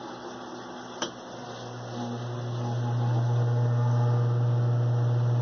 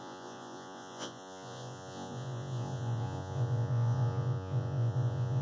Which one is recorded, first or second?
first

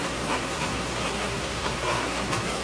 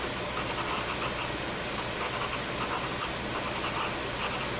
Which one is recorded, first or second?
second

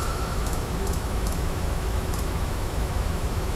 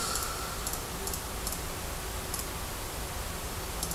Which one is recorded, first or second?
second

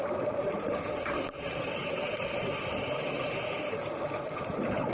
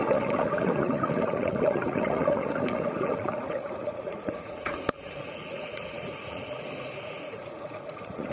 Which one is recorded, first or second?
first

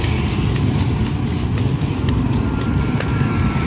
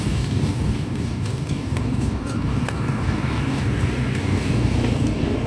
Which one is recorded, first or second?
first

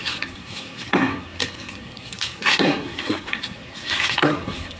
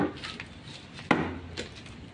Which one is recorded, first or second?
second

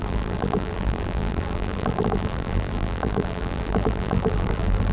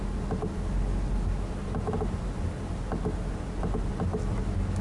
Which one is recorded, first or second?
second